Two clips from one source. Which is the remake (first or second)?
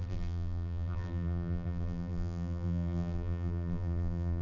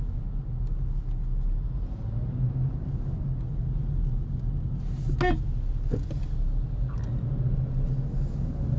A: first